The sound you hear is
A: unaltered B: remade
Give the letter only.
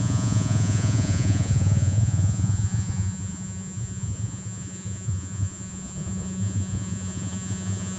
B